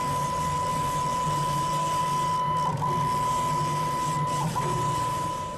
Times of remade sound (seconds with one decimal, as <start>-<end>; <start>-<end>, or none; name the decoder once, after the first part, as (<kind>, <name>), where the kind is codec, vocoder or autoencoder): 0.0-0.7 (vocoder, BigVGAN v2); 2.0-2.7; 3.3-5.6